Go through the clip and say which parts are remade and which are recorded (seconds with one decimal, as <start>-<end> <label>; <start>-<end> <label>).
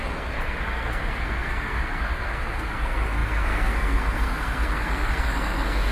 0.0-5.9 remade